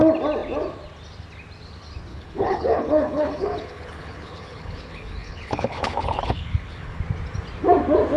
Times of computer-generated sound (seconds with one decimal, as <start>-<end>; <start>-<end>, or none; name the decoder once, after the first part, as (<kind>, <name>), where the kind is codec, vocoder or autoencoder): 2.1-7.0 (codec, HILCodec)